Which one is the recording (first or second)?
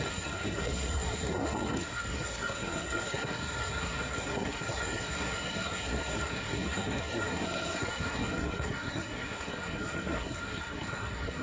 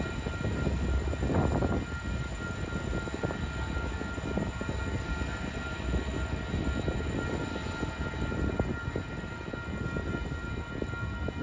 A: second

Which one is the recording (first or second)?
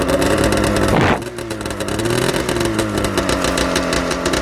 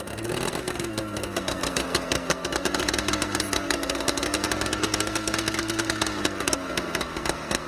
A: first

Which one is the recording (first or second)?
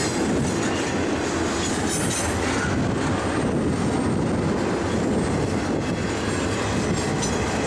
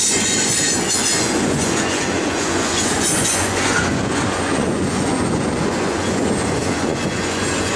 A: first